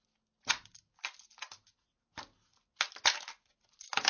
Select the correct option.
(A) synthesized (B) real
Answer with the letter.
B